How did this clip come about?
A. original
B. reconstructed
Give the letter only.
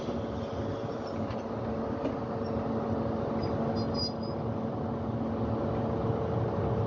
A